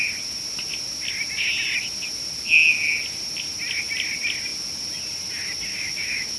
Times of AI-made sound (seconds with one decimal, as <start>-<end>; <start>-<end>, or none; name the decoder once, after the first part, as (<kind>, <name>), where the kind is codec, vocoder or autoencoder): 5.7-6.4 (autoencoder, DAC-VAE)